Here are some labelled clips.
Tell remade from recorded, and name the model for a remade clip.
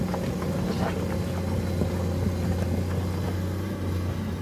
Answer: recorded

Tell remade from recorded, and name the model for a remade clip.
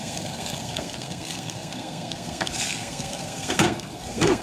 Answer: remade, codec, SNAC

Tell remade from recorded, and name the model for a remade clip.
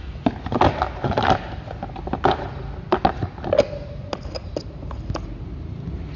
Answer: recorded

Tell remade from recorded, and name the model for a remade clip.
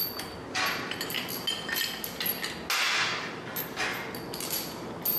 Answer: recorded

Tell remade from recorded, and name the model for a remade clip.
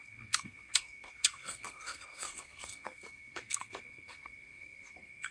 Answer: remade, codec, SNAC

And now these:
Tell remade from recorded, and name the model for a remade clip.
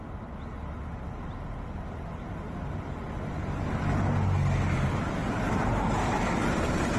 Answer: recorded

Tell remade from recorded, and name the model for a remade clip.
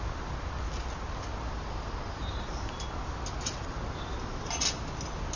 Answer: recorded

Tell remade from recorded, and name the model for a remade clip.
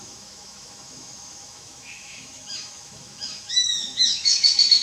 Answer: remade, autoencoder, DAC-VAE